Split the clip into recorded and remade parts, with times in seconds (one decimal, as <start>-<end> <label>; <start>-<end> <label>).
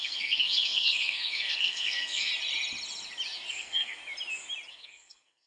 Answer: 0.0-2.3 remade; 2.3-3.5 recorded; 3.5-4.0 remade; 4.0-4.7 recorded; 4.7-5.5 remade